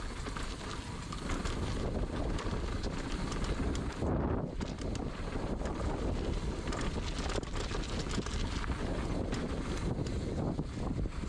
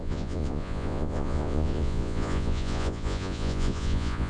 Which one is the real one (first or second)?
first